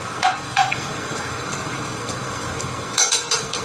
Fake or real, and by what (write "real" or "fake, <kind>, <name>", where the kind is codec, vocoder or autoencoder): fake, codec, SNAC